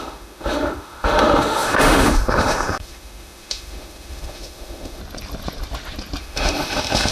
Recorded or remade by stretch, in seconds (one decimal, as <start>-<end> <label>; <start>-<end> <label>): 0.0-5.0 remade; 5.0-6.2 recorded; 6.2-7.1 remade